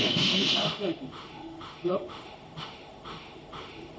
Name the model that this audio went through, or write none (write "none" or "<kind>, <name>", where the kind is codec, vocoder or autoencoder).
autoencoder, DAC-VAE